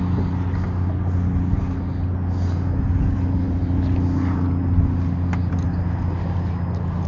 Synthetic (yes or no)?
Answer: no